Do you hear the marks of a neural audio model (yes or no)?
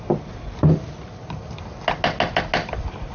no